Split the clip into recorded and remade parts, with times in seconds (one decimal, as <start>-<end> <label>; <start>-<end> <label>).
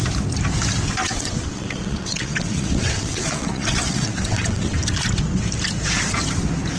0.0-1.0 recorded; 1.0-4.8 remade; 4.8-6.8 recorded